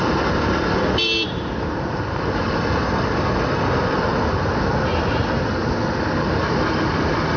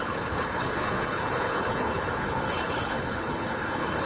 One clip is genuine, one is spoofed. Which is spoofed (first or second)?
second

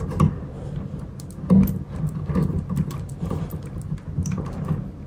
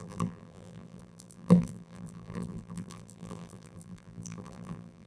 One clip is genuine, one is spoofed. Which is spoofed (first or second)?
second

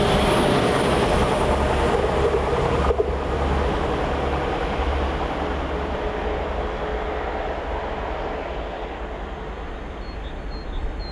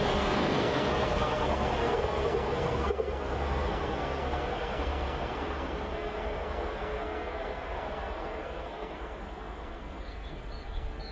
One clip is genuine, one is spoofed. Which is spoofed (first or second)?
second